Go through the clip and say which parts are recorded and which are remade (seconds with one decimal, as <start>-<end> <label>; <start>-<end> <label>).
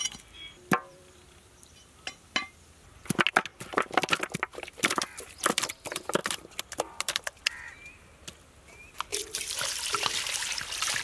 0.0-0.9 recorded; 0.9-2.4 remade; 2.4-3.5 recorded; 3.5-4.1 remade; 4.1-6.2 recorded; 6.2-7.4 remade; 7.4-9.1 recorded; 9.1-9.7 remade; 9.7-11.0 recorded